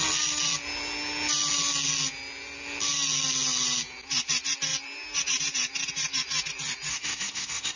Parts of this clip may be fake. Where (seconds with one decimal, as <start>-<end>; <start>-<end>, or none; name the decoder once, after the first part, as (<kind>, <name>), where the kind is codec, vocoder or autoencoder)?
6.9-7.8 (codec, SNAC)